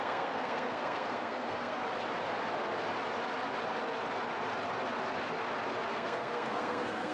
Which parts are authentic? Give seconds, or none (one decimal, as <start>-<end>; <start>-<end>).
1.8-5.9